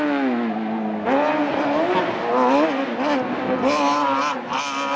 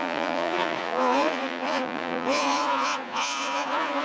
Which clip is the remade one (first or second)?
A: second